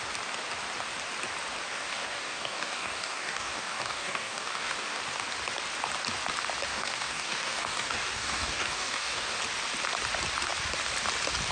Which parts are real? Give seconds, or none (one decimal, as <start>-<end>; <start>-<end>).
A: 0.0-1.7; 5.0-6.7; 9.4-11.5